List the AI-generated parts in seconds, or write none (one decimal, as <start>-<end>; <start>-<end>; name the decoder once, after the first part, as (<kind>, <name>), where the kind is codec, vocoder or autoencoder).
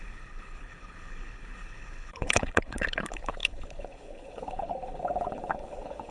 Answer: 0.0-6.1 (codec, HILCodec)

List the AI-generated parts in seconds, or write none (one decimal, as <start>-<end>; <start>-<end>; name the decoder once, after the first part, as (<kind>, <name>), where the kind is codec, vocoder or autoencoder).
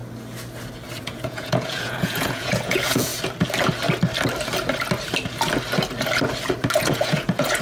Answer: 1.0-3.1 (vocoder, Vocos); 6.8-7.6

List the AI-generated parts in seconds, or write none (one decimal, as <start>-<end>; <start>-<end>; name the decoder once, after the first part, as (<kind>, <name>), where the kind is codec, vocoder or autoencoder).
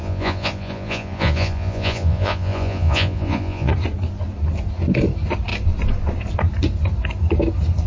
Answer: 0.0-3.7 (vocoder, Vocos)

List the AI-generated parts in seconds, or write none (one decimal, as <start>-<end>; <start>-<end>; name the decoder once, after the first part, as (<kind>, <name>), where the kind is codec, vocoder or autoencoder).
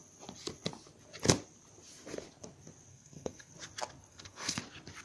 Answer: 2.9-3.5 (codec, SNAC); 4.1-4.6